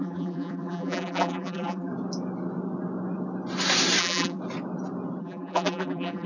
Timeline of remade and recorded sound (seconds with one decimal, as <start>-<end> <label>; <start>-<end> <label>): 0.0-1.9 remade; 1.9-4.0 recorded; 4.0-4.4 remade; 4.4-5.2 recorded; 5.2-6.3 remade